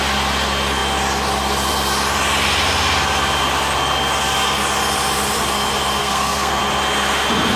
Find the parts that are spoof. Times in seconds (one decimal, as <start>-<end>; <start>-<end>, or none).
6.0-6.6